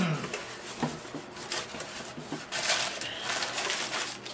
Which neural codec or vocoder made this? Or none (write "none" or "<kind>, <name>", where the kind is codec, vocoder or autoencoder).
none